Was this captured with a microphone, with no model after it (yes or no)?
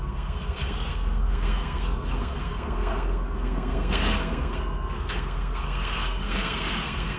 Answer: no